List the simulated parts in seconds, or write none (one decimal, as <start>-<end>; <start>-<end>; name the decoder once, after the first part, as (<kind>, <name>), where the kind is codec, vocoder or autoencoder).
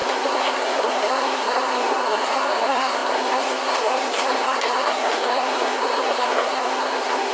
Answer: 0.0-7.3 (codec, SNAC)